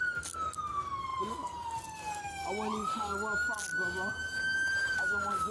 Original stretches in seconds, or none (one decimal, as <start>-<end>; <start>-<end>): 0.0-5.5